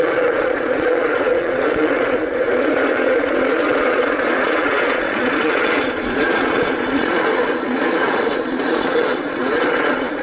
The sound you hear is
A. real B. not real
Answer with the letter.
B